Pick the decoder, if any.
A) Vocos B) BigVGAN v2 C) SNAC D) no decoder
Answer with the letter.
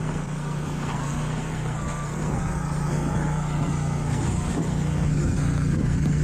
C